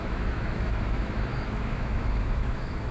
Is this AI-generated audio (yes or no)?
yes